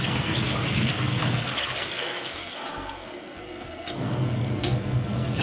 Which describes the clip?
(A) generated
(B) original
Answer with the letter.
A